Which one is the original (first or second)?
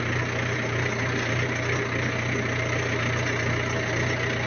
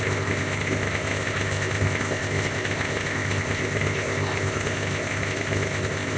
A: first